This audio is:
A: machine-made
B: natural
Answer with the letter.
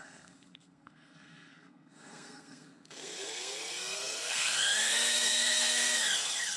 A